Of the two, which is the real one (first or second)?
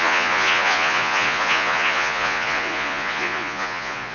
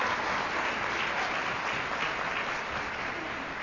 second